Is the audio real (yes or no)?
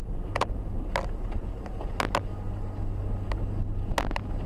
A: yes